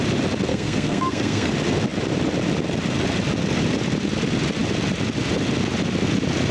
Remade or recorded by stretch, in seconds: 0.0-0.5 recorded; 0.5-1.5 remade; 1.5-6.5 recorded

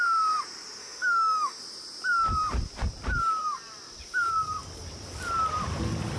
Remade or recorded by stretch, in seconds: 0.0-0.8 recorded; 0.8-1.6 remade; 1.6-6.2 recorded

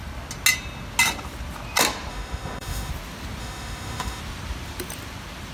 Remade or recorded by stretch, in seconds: 0.0-2.1 recorded; 2.1-2.9 remade; 2.9-3.4 recorded; 3.4-4.2 remade; 4.2-5.5 recorded

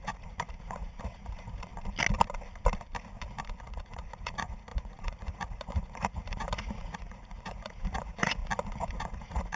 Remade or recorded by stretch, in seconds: 0.0-1.7 remade; 1.7-3.6 recorded; 3.6-8.4 remade; 8.4-8.9 recorded; 8.9-9.6 remade

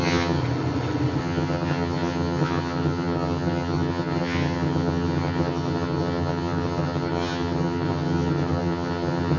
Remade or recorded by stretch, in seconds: 0.0-0.4 remade; 0.4-1.2 recorded; 1.2-9.4 remade